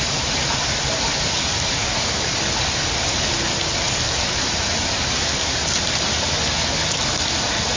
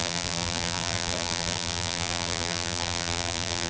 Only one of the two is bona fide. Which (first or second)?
first